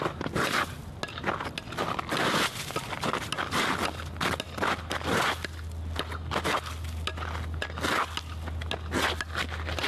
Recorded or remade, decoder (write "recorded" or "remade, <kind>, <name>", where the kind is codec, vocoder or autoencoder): recorded